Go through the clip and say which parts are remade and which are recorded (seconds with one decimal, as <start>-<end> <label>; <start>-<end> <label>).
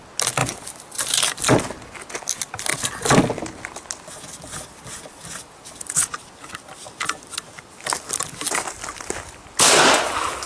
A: 0.0-0.4 recorded; 0.4-1.6 remade; 1.6-10.5 recorded